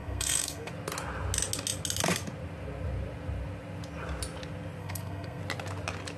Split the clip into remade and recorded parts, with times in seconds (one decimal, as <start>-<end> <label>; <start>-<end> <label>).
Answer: 0.0-0.7 remade; 0.7-4.8 recorded; 4.8-5.4 remade; 5.4-6.2 recorded

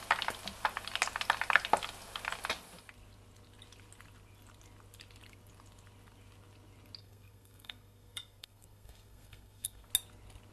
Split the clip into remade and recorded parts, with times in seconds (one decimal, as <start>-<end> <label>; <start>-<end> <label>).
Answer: 0.0-7.0 recorded; 7.0-9.9 remade; 9.9-10.5 recorded

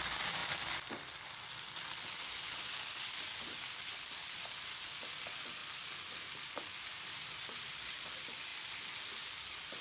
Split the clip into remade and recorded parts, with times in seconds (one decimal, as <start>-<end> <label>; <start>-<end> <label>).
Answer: 0.0-9.8 recorded

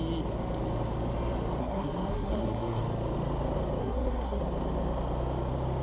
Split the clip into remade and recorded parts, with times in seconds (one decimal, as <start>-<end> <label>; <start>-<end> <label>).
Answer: 0.0-1.6 recorded; 1.6-2.8 remade; 2.8-3.8 recorded; 3.8-4.4 remade; 4.4-5.8 recorded